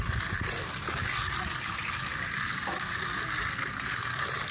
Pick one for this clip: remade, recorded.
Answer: recorded